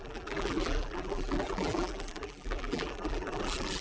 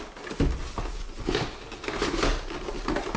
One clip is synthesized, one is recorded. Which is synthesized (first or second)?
first